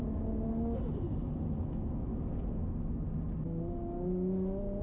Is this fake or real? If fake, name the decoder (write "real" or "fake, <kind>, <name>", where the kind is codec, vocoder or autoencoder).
real